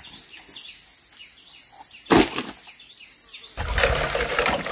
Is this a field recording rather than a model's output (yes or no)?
yes